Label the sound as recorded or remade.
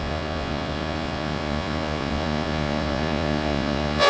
remade